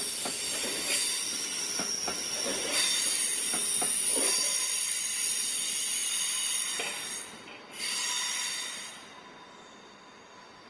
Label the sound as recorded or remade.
recorded